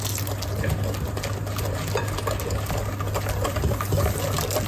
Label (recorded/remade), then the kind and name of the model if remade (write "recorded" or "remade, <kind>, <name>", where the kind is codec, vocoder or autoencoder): recorded